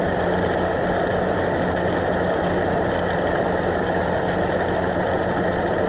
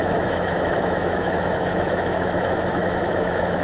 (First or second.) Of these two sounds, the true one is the first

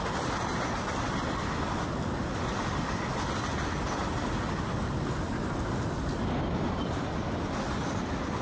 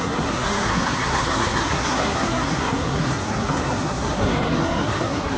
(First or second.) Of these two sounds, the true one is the first